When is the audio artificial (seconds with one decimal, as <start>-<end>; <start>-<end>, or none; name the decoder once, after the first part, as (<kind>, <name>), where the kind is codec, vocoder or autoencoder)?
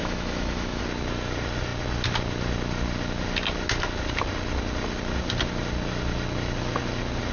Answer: 0.0-0.8 (autoencoder, DAC-VAE)